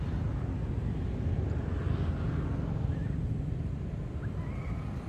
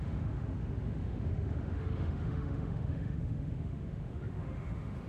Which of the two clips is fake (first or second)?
second